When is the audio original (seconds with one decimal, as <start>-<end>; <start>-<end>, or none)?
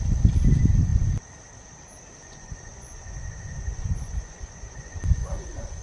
0.0-2.2